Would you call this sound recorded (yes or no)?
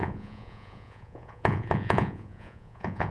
no